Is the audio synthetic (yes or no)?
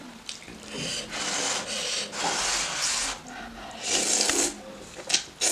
no